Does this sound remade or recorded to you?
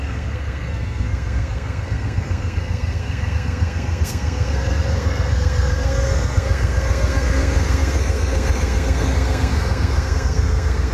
remade